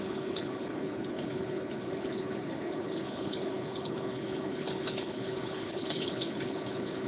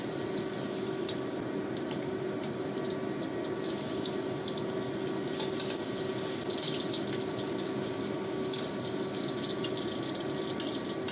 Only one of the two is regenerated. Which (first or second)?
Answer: first